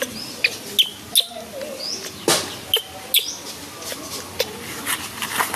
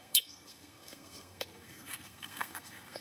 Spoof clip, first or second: second